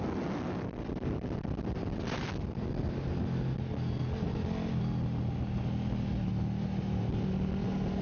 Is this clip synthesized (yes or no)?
no